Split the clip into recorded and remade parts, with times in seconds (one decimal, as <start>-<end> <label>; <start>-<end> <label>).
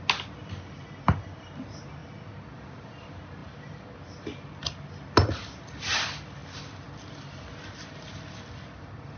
0.0-9.2 recorded